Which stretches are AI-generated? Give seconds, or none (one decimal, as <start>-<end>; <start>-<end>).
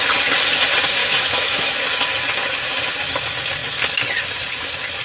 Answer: 1.0-1.7